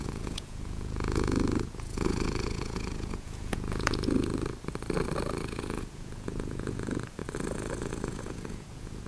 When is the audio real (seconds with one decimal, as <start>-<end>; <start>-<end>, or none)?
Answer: 4.3-5.4; 7.2-7.8